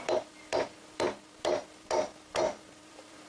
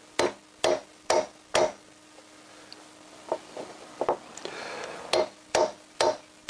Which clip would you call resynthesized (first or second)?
first